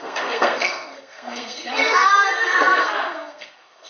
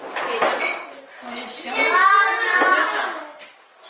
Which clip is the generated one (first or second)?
first